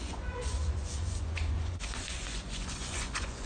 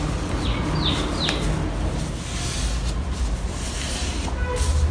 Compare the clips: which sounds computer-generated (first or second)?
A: first